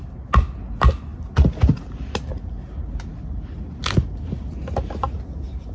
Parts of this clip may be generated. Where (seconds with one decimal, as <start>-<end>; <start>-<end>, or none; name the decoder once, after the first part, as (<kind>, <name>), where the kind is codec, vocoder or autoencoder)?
none